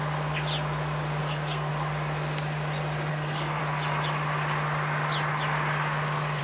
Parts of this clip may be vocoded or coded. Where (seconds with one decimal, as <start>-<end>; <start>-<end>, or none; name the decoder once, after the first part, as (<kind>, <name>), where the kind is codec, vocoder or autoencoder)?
1.2-1.7 (codec, SNAC); 3.1-3.6